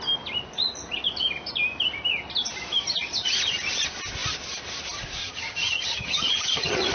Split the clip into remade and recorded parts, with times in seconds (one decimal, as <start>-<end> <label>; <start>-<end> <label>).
0.0-5.2 recorded; 5.2-6.9 remade